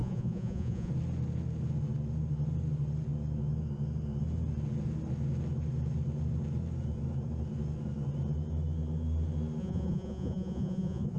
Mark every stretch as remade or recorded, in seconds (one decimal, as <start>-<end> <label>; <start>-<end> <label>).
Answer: 0.0-0.9 remade; 0.9-9.6 recorded; 9.6-11.2 remade